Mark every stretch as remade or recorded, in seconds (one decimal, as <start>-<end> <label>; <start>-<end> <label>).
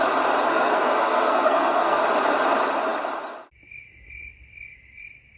0.0-0.5 recorded; 0.5-2.0 remade; 2.0-5.4 recorded